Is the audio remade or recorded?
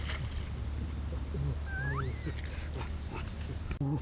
recorded